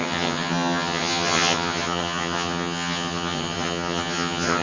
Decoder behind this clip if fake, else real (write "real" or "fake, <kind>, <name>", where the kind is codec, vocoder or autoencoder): fake, vocoder, HiFi-GAN